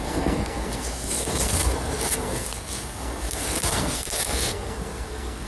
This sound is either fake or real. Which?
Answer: fake